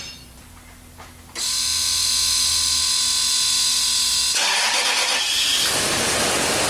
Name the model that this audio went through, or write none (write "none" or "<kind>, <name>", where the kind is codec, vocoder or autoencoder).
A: none